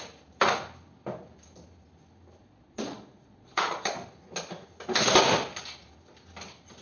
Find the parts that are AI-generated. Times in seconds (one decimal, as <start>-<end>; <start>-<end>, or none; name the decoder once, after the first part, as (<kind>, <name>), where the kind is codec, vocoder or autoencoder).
2.4-3.9 (vocoder, Vocos)